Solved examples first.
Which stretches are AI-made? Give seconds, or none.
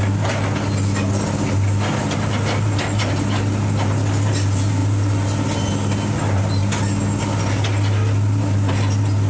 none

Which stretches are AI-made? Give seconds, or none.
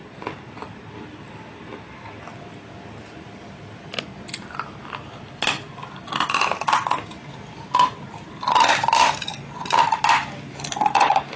none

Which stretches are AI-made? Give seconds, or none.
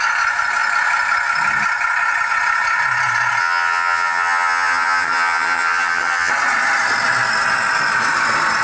3.4-6.3 (vocoder, HiFi-GAN)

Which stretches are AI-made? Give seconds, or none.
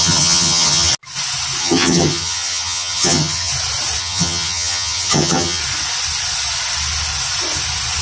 0.0-0.9 (vocoder, HiFi-GAN); 1.6-3.5; 4.0-5.6